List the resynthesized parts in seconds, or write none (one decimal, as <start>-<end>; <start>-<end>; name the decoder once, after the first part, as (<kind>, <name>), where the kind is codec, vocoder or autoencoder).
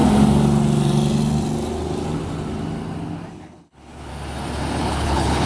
3.3-4.1 (codec, HILCodec); 4.8-5.5